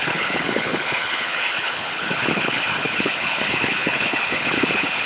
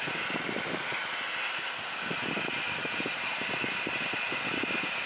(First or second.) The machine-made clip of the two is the first